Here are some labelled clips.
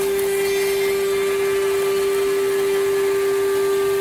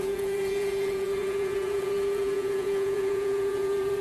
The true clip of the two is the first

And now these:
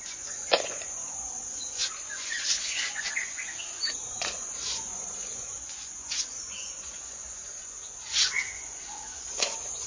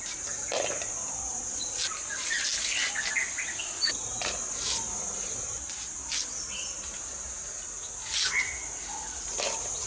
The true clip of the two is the second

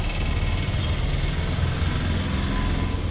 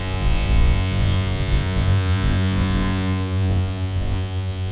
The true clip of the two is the first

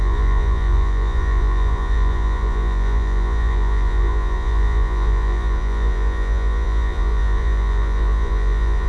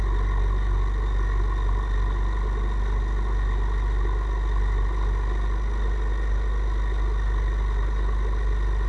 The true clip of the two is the second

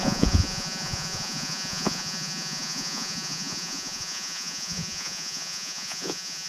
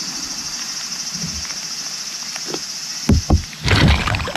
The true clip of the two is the second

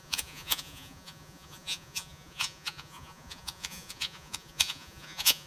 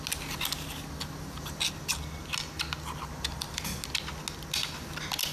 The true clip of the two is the second